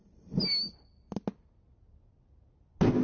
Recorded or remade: recorded